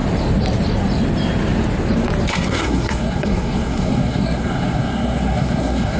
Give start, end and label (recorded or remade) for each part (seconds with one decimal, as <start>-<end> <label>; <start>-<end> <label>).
0.0-2.3 recorded; 2.3-6.0 remade